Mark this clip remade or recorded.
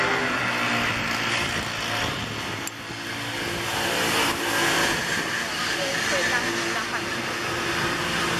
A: recorded